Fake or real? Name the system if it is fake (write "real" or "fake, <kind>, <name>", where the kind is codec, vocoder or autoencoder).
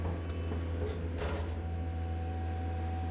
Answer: real